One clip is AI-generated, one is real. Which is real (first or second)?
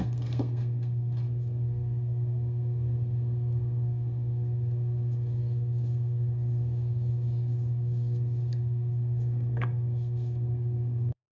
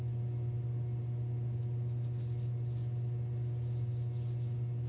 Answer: second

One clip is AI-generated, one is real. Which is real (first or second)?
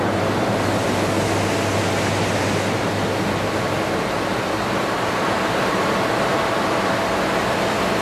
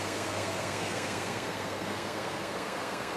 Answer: first